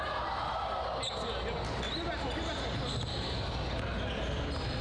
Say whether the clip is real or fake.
real